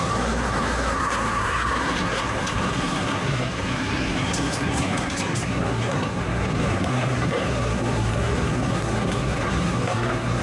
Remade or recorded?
remade